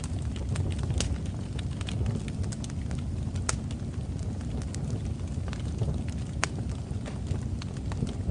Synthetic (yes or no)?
no